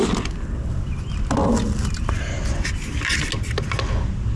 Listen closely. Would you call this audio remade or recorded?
recorded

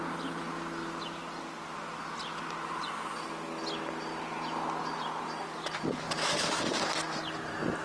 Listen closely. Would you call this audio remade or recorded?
recorded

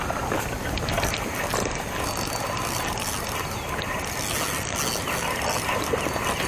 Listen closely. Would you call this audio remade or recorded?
recorded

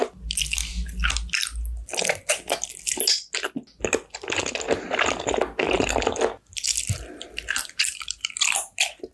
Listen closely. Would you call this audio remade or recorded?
recorded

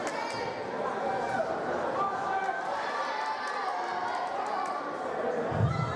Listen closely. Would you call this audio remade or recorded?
recorded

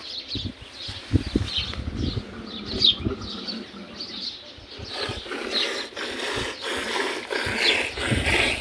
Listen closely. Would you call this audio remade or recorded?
recorded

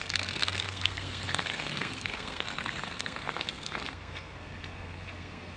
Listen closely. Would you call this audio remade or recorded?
remade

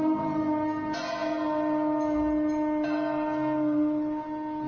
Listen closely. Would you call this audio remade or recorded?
recorded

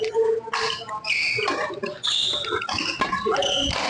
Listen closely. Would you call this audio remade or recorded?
recorded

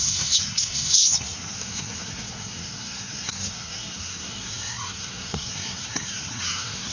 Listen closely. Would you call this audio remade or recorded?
remade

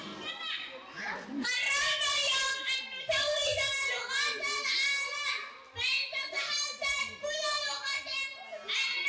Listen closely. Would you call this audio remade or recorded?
recorded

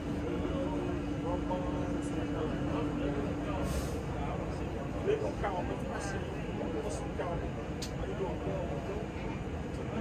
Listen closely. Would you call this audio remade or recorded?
recorded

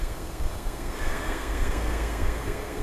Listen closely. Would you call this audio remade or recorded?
remade